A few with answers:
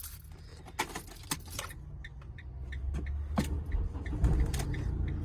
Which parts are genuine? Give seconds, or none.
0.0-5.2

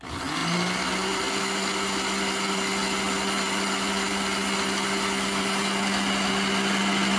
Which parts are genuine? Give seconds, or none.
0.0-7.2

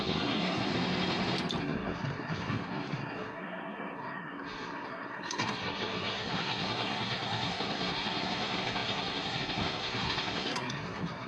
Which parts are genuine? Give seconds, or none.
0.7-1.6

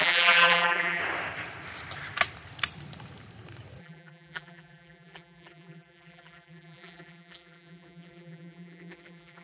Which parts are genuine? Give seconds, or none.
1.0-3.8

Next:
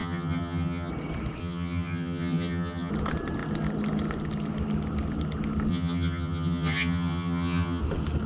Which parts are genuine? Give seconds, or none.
0.9-1.4; 2.9-5.7; 7.8-8.3

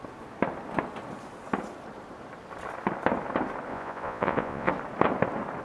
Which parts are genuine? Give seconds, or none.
0.0-3.7; 4.7-5.6